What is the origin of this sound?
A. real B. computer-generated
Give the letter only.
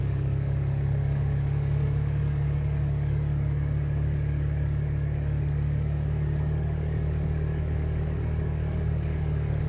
B